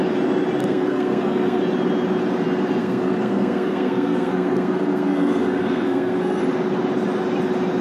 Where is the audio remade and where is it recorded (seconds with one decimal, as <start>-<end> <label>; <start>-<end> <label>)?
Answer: 0.0-0.6 recorded; 0.6-1.6 remade; 1.6-2.8 recorded; 2.8-6.4 remade; 6.4-7.8 recorded